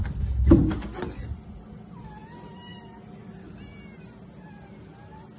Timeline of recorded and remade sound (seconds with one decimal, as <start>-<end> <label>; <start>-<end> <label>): 0.0-5.4 recorded